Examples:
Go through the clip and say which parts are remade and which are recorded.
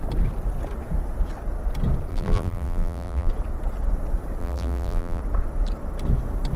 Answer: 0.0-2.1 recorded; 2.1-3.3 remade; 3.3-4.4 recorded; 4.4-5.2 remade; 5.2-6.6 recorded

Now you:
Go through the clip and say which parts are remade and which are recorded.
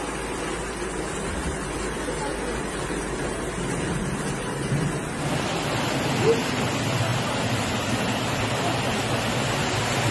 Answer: 0.0-10.1 recorded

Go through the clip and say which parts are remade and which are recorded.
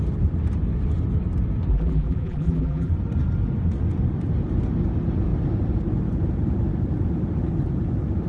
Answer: 0.0-1.7 recorded; 1.7-2.9 remade; 2.9-8.3 recorded